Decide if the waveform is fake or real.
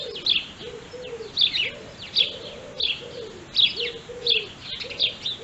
real